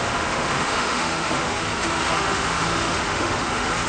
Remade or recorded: remade